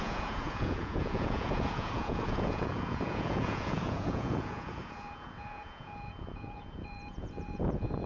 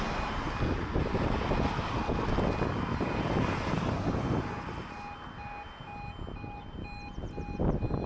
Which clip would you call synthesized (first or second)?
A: first